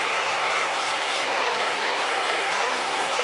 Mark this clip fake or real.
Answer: fake